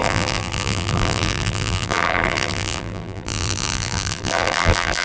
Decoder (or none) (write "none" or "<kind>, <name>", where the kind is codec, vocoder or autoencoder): vocoder, BigVGAN v2